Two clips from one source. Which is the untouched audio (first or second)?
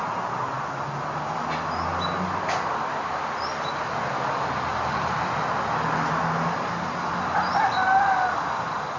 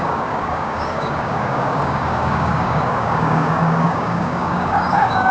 first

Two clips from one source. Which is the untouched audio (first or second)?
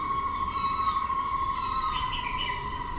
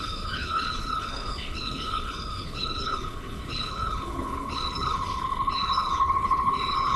first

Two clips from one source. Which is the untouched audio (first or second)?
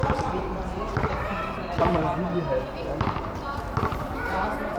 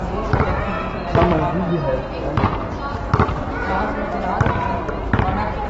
second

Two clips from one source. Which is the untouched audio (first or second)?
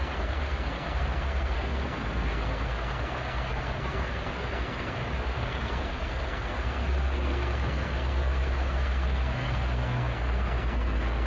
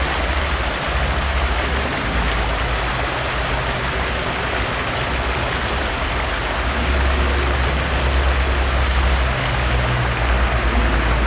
second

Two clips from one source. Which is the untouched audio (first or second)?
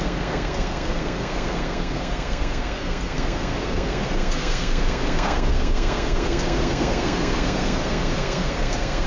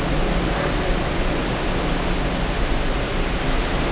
second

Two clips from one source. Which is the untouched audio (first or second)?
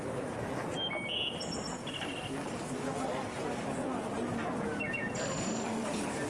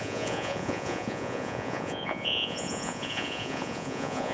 first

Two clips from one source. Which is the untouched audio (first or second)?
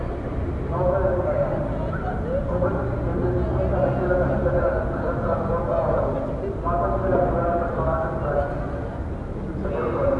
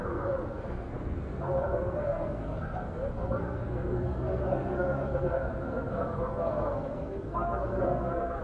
first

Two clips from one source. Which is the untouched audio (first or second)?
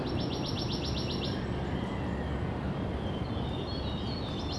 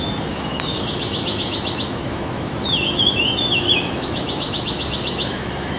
first